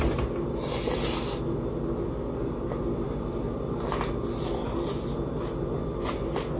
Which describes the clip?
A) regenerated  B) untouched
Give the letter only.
B